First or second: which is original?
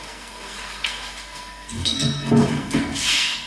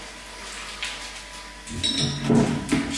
second